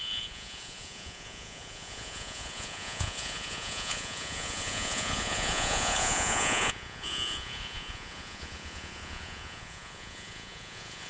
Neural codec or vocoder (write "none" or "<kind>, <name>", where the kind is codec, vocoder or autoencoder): vocoder, Vocos